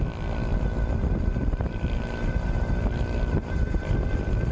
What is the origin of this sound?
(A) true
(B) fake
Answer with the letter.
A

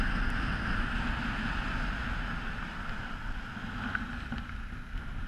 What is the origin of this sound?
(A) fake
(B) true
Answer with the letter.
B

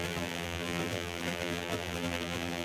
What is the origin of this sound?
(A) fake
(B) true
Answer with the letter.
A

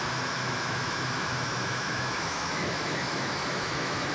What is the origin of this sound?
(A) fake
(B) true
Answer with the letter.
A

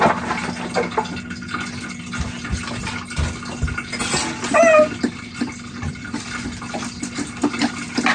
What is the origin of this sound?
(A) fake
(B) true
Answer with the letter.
B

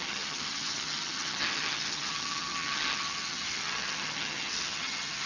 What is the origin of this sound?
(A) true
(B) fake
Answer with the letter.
B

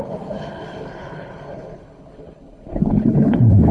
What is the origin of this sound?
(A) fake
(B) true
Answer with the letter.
A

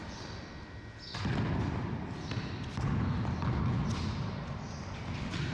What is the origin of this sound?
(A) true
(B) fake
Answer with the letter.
A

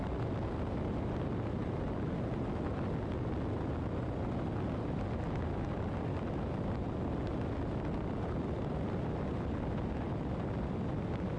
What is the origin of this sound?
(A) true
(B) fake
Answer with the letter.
A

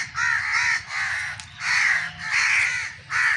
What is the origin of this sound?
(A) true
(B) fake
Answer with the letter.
A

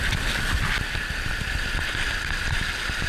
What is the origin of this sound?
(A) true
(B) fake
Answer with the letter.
A